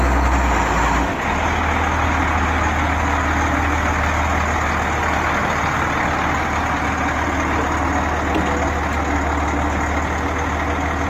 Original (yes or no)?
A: yes